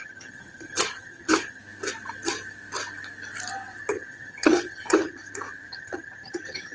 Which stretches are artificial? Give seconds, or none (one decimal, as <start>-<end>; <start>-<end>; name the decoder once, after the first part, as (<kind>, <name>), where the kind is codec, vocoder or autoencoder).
0.0-1.6 (vocoder, HiFi-GAN); 3.8-5.2; 5.7-6.7